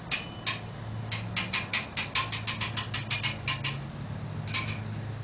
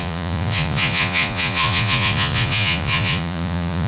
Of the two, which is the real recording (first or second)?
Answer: first